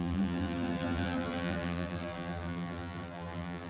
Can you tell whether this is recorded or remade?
remade